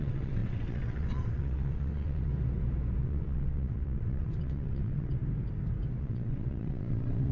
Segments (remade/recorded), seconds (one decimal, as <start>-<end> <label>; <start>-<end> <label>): 0.0-2.3 remade; 2.3-3.0 recorded; 3.0-5.2 remade; 5.2-6.0 recorded; 6.0-7.3 remade